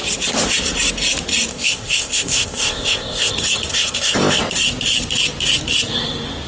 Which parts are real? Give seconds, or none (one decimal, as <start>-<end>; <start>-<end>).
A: 0.0-1.5; 3.3-3.7; 4.4-6.5